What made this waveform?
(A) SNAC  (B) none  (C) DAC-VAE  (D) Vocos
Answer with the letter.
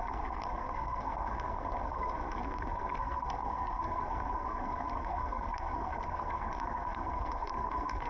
A